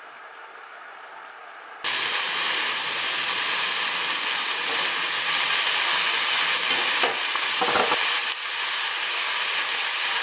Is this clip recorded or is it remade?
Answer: recorded